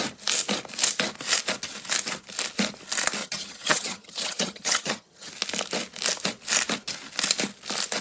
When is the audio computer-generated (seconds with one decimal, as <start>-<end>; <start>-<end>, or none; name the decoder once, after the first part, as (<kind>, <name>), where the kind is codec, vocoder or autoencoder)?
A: 3.2-5.3 (vocoder, HiFi-GAN)